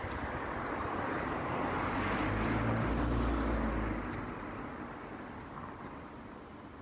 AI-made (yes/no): no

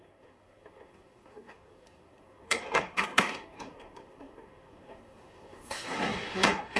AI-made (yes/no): yes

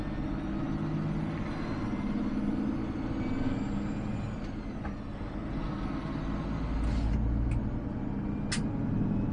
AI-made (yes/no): no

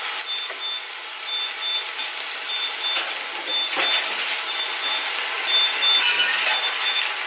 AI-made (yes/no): no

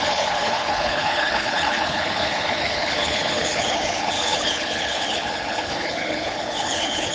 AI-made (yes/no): yes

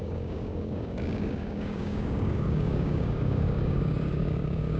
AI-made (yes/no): yes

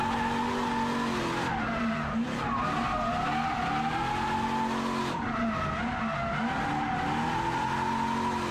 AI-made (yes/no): no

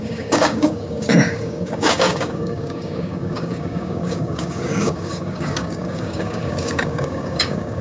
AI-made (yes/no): yes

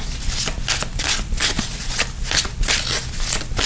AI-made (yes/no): no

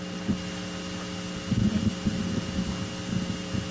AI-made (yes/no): no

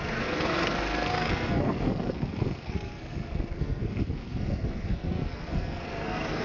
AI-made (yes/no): yes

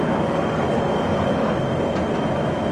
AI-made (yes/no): no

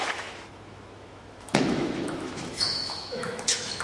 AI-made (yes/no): yes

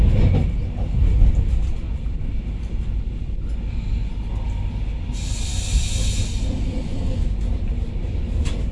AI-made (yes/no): no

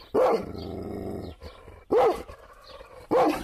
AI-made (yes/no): no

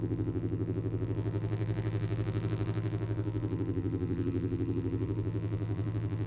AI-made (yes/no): yes